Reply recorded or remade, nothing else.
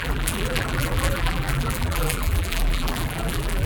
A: remade